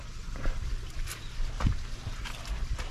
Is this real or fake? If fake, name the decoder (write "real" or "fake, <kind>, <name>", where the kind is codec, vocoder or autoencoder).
real